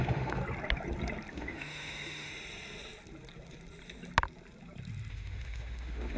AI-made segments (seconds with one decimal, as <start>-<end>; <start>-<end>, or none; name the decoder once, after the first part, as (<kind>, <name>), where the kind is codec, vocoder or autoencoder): 0.0-0.4 (autoencoder, DAC-VAE); 1.3-2.3; 5.1-6.2